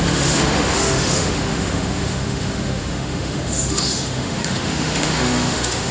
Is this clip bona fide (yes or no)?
no